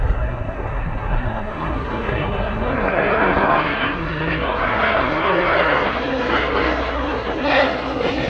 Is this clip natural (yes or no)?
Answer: no